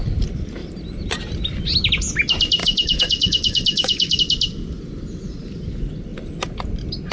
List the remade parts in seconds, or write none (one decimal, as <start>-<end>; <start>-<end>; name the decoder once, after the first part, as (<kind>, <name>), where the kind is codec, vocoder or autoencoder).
2.6-4.2 (autoencoder, DAC-VAE)